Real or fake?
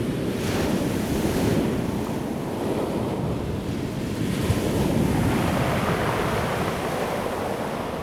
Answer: real